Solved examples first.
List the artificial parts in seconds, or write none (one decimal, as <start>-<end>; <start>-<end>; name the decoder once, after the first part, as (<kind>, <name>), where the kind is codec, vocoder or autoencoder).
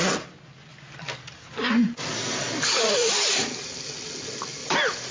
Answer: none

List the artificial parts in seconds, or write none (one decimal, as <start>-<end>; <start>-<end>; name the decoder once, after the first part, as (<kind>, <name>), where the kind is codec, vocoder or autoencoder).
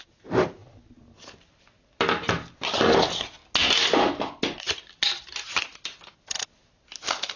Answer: none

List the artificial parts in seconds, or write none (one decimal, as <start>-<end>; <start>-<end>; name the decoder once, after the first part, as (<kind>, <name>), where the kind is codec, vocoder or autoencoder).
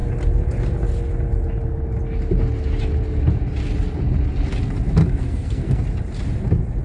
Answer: 5.0-5.8 (codec, SNAC)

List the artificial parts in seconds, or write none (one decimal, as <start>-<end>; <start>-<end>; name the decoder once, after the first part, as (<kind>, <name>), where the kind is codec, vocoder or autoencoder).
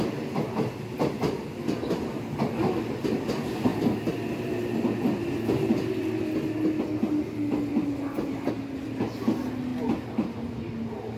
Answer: none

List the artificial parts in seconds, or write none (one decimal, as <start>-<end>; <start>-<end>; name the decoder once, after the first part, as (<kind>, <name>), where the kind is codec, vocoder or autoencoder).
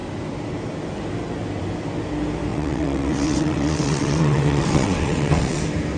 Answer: 2.5-5.6 (vocoder, WaveNeXt)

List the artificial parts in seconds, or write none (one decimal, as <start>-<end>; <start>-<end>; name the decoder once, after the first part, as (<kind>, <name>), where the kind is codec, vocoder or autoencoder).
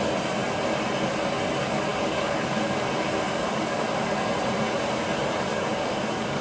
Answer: 1.9-4.3 (codec, DAC); 5.5-6.4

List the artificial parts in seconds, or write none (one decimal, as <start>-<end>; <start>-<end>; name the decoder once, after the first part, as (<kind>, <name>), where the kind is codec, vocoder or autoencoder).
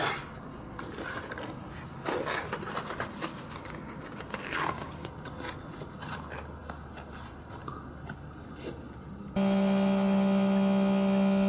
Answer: 3.3-5.1 (codec, DAC)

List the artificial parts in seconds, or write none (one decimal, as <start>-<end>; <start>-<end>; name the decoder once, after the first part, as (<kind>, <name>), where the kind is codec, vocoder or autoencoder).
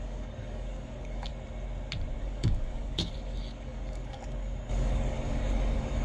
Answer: 0.0-1.3 (codec, DAC); 2.2-6.0